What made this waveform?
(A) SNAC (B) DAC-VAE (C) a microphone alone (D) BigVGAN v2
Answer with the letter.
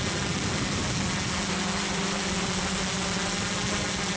C